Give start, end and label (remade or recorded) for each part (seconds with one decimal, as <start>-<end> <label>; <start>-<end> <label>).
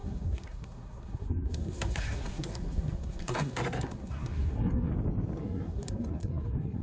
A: 0.0-4.9 remade; 4.9-5.4 recorded; 5.4-6.8 remade